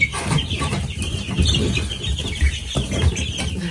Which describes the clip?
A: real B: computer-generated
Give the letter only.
B